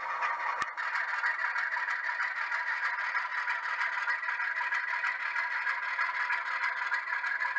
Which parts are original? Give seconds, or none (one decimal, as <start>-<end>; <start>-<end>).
0.0-7.6